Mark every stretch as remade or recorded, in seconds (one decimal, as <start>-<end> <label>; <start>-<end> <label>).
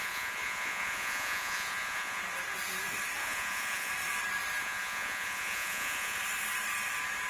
0.0-2.2 remade; 2.2-3.2 recorded; 3.2-3.9 remade; 3.9-4.6 recorded; 4.6-6.2 remade; 6.2-7.3 recorded